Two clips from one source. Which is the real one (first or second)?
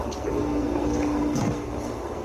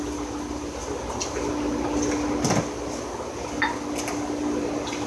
second